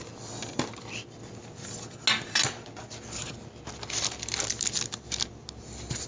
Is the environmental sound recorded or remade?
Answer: recorded